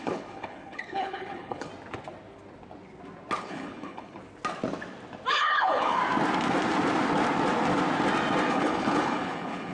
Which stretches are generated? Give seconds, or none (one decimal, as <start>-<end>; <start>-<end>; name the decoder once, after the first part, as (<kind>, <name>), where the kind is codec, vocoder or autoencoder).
0.0-1.7 (codec, HILCodec); 3.4-4.2; 5.3-6.0; 8.5-9.7

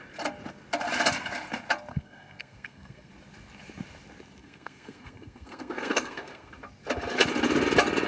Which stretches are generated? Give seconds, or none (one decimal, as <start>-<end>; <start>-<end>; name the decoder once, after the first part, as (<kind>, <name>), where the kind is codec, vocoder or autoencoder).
1.9-3.1 (codec, SNAC); 4.4-6.5

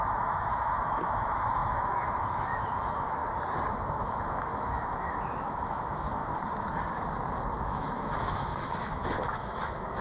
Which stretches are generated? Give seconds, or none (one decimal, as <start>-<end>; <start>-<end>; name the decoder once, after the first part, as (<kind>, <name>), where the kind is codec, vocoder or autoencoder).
0.0-3.2 (autoencoder, DAC-VAE); 3.7-6.2; 7.6-10.0